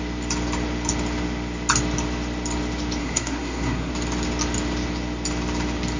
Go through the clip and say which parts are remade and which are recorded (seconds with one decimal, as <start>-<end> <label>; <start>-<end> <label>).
0.0-3.0 recorded; 3.0-3.9 remade; 3.9-6.0 recorded